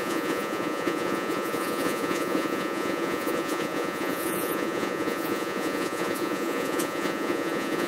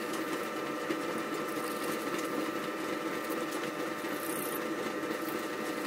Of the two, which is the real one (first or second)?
second